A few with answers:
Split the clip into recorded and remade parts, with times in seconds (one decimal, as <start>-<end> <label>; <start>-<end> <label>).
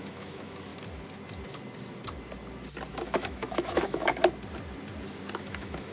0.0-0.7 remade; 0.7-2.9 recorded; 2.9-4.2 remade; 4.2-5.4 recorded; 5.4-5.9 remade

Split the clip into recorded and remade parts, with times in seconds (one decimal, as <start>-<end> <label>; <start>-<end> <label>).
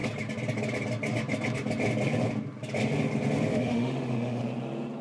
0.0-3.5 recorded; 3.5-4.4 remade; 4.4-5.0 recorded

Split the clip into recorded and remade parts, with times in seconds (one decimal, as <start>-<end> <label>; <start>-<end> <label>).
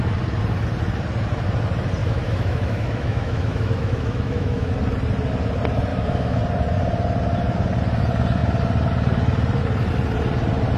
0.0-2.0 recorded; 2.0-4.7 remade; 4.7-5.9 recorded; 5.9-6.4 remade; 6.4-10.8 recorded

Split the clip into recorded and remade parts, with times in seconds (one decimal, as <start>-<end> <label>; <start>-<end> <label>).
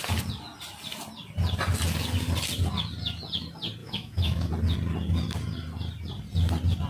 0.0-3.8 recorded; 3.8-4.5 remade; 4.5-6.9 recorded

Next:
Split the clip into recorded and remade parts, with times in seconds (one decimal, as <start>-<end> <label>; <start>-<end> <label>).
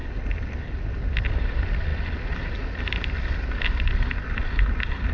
0.0-5.1 recorded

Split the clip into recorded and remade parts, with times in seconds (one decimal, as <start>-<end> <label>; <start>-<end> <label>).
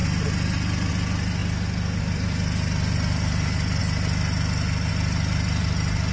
0.0-6.1 recorded